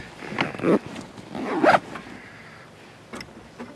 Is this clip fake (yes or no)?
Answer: no